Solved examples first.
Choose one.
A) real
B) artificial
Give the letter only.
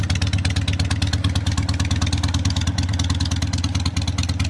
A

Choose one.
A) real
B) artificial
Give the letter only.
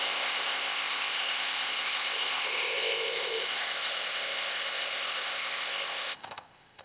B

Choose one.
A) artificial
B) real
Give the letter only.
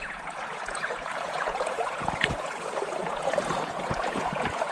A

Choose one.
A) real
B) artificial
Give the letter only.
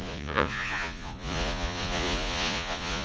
B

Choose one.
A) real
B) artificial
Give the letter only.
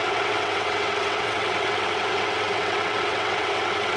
B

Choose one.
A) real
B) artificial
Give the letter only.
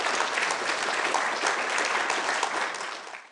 A